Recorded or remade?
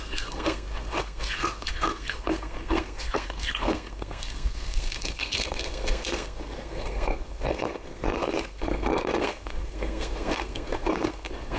remade